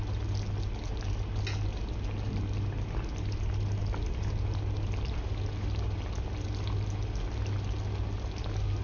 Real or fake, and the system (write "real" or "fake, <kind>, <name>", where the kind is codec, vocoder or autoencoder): real